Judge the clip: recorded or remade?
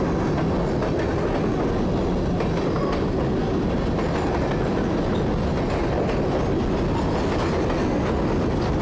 recorded